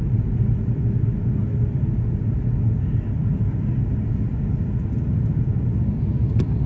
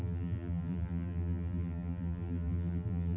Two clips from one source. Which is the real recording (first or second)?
first